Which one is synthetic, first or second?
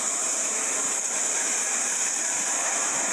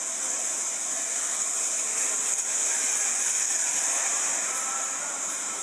first